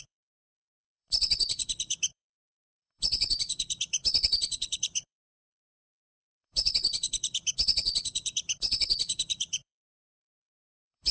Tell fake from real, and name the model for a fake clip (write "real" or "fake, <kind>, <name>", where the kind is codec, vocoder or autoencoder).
fake, codec, HILCodec